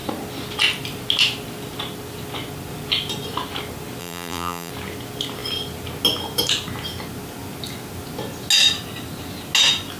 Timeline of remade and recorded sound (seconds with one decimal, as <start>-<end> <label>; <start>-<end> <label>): 0.0-4.0 recorded; 4.0-4.7 remade; 4.7-10.0 recorded